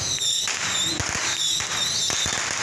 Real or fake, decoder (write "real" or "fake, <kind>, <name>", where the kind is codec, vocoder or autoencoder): real